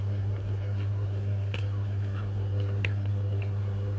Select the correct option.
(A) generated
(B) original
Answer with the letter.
A